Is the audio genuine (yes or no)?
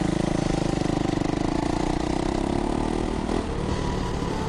yes